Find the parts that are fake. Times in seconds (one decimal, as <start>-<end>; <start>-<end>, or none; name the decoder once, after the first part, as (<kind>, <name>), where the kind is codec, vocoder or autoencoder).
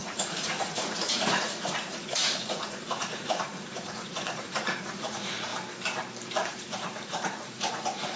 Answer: 0.0-5.5 (vocoder, Vocos); 6.5-8.2